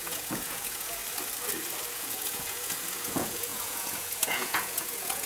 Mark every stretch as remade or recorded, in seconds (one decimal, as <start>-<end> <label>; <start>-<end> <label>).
0.0-1.0 remade; 1.0-1.9 recorded; 1.9-5.3 remade